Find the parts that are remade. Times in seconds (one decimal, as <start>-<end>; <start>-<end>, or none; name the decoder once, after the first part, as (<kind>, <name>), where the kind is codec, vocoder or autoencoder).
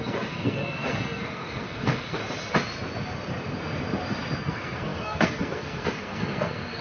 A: 0.0-2.2 (codec, SNAC); 4.4-6.8